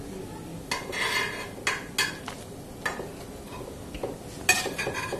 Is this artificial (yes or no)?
no